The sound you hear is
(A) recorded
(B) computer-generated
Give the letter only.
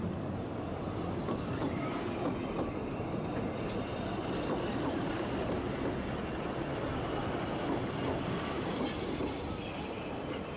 A